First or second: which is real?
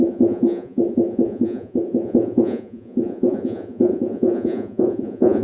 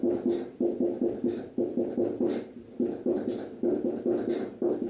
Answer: second